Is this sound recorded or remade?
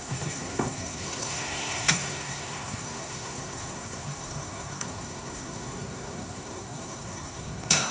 remade